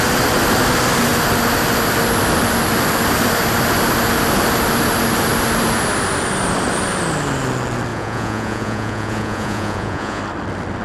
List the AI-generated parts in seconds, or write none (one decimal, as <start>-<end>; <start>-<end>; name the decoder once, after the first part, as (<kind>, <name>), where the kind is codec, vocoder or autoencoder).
7.9-10.2 (vocoder, Vocos)